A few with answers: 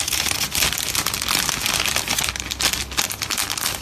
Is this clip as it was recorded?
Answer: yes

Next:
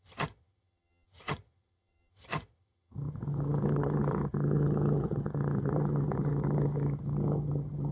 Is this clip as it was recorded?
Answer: no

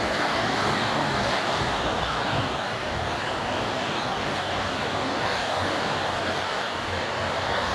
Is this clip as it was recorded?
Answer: no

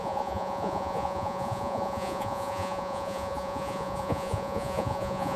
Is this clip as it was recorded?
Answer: no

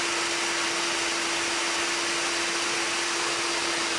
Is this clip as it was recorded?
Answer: yes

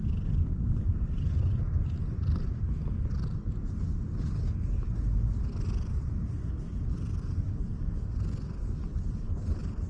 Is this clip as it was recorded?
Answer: yes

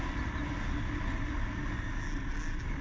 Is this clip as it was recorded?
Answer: yes